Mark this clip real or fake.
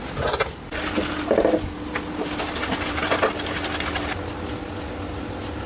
real